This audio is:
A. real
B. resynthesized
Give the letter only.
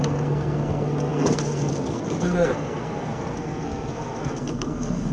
B